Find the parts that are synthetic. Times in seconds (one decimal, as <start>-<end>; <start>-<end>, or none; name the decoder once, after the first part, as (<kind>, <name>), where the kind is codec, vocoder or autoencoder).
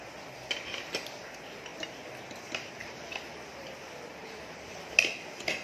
4.2-4.9 (vocoder, BigVGAN v2)